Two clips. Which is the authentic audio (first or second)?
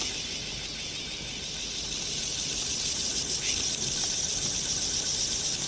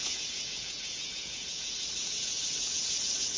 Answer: first